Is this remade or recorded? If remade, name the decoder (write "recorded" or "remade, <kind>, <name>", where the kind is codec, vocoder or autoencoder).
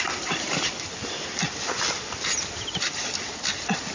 recorded